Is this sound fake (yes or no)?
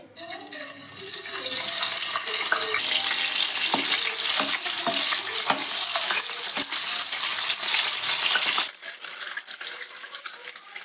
no